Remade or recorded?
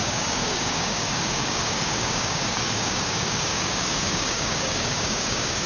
remade